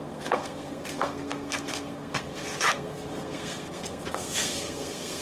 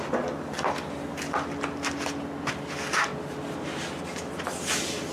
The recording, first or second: second